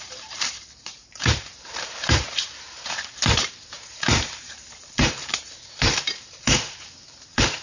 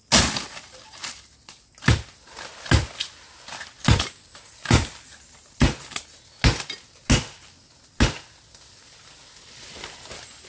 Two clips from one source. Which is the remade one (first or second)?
first